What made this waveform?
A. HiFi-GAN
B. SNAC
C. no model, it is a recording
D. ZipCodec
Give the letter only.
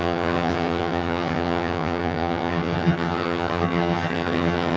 A